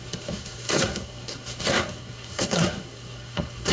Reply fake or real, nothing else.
fake